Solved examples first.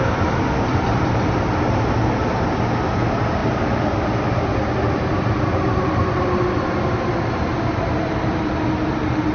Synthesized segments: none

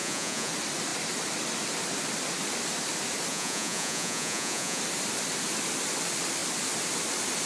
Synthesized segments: 0.0-0.5 (vocoder, Vocos); 3.3-4.8

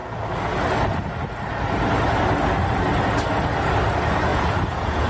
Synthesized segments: 4.3-5.1 (vocoder, Vocos)

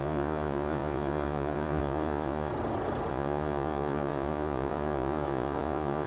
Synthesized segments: 0.0-2.5 (vocoder, Vocos); 3.1-6.1

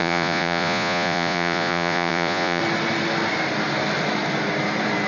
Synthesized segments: 0.0-2.6 (vocoder, Vocos)